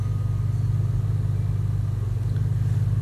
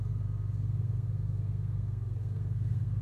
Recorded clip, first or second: first